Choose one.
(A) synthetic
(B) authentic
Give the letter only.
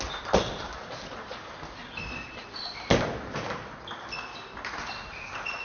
B